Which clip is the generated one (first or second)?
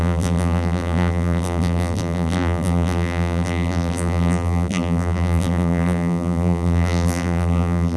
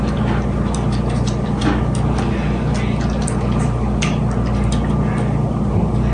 first